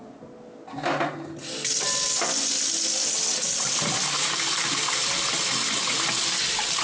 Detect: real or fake real